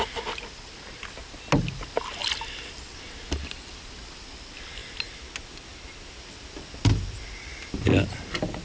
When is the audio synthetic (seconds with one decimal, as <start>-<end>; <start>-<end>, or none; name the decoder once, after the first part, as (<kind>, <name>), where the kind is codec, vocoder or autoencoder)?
none